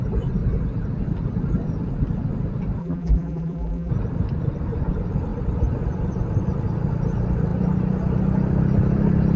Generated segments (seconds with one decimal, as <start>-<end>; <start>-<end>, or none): 2.8-3.9